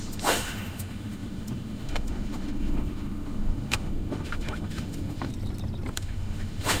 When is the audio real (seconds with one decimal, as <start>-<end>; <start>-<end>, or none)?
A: 5.3-5.9